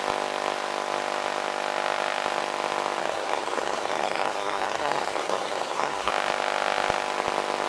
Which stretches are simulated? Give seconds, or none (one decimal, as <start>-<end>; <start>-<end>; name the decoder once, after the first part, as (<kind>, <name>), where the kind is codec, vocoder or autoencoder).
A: 3.0-6.1 (codec, SNAC)